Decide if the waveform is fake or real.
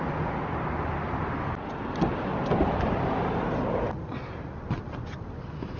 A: real